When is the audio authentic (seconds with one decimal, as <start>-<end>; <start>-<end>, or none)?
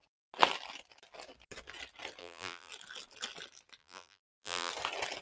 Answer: 0.0-2.2; 2.7-3.8; 4.7-5.2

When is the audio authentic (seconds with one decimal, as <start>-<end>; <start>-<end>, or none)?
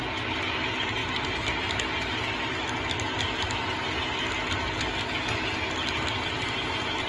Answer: 0.0-7.1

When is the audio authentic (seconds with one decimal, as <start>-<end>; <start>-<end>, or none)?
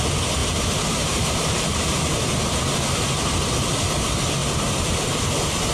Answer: 0.0-0.4; 2.6-5.7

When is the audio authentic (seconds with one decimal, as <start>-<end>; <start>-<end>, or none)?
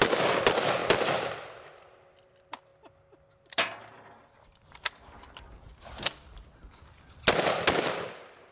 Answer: 0.0-8.5